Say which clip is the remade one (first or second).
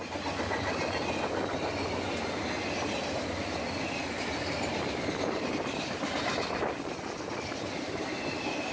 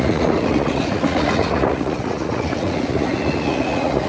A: second